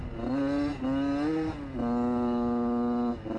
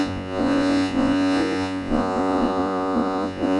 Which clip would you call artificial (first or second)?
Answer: second